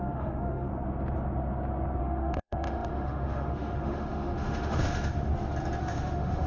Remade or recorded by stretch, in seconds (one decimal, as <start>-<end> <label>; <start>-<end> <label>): 0.0-0.7 remade; 0.7-2.0 recorded; 2.0-5.3 remade; 5.3-5.8 recorded; 5.8-6.5 remade